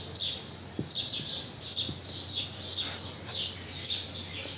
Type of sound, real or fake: real